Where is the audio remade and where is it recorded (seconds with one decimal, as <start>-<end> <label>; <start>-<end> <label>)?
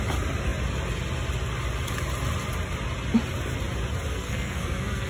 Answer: 0.0-4.1 recorded; 4.1-5.1 remade